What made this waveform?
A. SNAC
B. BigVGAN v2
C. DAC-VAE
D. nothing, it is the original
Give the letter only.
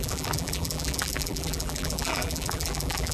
B